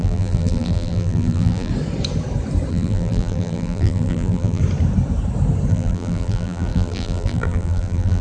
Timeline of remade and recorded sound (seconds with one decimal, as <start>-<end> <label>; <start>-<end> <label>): 0.0-1.7 remade; 1.7-2.7 recorded; 2.7-4.6 remade; 4.6-5.7 recorded; 5.7-8.2 remade